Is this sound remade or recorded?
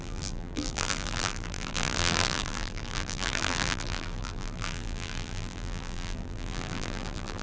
remade